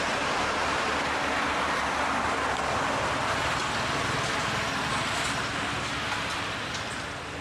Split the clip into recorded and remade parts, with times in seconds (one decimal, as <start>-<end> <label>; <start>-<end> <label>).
0.0-7.4 recorded